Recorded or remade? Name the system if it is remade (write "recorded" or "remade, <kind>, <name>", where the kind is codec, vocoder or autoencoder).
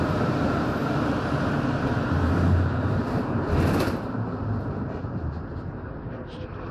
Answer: remade, vocoder, BigVGAN v2